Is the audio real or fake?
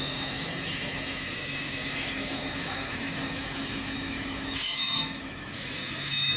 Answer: fake